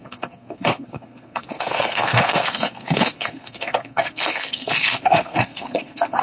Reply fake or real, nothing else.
fake